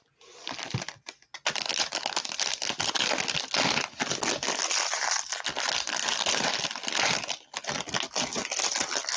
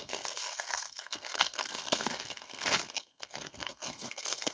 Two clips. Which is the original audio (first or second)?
first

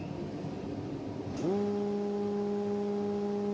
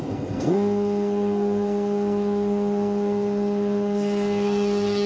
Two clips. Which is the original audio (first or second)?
first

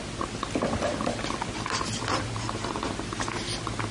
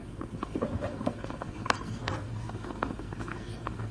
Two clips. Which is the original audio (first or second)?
first